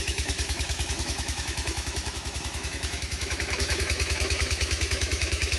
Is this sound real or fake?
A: fake